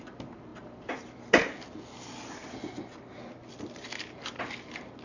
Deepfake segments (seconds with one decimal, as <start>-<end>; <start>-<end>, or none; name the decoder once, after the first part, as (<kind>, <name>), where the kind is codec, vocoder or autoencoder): none